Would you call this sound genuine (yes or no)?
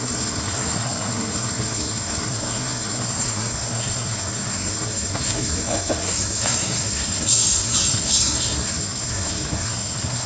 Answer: no